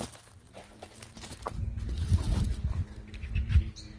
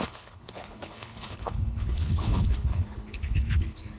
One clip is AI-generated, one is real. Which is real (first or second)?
first